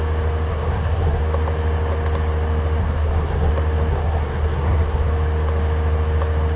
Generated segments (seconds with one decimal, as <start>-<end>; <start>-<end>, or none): 0.5-1.2; 2.8-3.5; 3.9-5.1